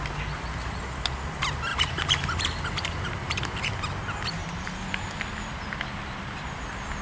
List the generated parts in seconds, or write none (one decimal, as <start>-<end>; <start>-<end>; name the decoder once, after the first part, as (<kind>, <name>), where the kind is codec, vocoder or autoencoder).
1.7-3.7 (vocoder, BigVGAN v2); 4.4-4.9